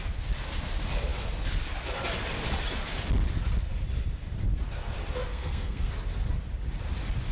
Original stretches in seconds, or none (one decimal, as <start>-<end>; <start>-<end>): 0.0-5.3; 5.9-7.3